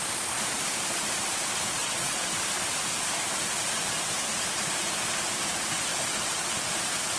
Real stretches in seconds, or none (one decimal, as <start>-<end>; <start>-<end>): 0.0-1.8; 2.3-7.2